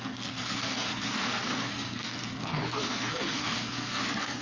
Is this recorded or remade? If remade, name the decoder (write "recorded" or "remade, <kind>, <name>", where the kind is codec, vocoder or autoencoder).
remade, codec, SNAC